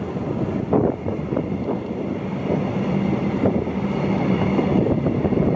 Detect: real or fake real